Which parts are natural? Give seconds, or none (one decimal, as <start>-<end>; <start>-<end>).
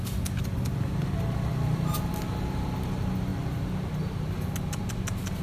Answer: 0.0-1.5; 2.1-5.4